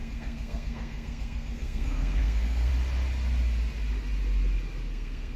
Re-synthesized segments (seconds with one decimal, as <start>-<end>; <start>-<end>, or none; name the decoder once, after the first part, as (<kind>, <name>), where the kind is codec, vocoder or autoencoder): 0.0-2.7 (codec, SNAC); 4.9-5.4